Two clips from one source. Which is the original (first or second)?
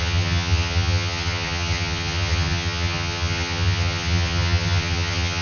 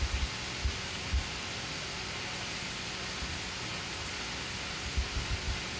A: second